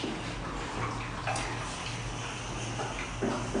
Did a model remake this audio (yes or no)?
no